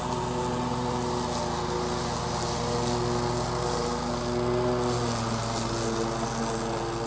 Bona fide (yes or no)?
yes